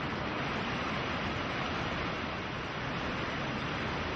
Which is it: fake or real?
real